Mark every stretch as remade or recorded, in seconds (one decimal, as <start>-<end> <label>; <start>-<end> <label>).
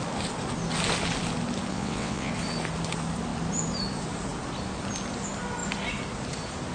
0.0-1.7 recorded; 1.7-2.3 remade; 2.3-6.7 recorded